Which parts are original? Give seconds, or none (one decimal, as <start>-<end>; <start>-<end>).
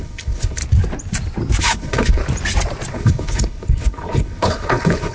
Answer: 0.6-1.6; 2.2-2.9